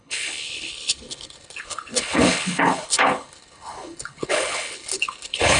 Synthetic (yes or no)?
yes